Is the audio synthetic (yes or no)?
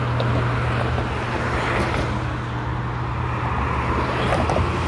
no